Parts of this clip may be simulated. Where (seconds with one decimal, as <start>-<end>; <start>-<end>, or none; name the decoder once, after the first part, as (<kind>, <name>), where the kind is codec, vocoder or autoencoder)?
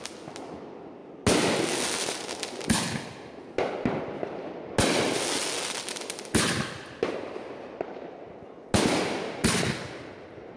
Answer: none